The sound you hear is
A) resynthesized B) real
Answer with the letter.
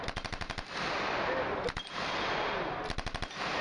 B